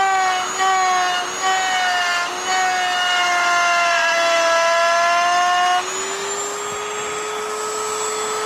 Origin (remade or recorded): recorded